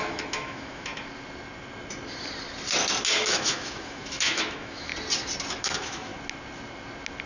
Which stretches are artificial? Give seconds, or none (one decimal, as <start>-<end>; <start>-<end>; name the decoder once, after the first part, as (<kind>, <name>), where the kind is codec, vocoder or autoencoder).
0.0-0.9 (autoencoder, DAC-VAE); 3.1-4.9; 5.5-6.1